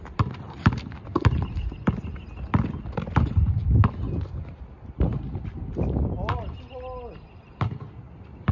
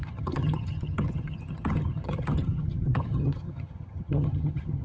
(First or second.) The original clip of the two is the first